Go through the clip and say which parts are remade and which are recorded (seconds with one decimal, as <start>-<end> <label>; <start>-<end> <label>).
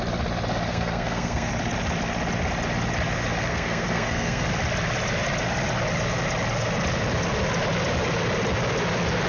0.0-0.7 recorded; 0.7-1.5 remade; 1.5-3.5 recorded; 3.5-4.5 remade; 4.5-9.3 recorded